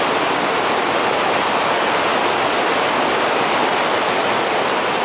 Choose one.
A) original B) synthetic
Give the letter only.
A